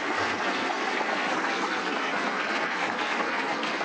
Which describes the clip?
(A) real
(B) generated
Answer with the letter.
B